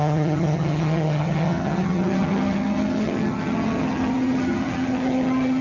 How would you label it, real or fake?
fake